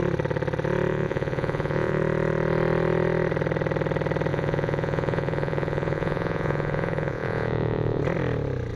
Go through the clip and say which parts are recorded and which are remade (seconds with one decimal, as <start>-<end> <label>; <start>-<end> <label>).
0.0-0.9 recorded; 0.9-2.0 remade; 2.0-4.3 recorded; 4.3-8.0 remade; 8.0-8.8 recorded